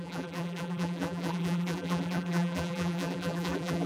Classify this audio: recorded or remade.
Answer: remade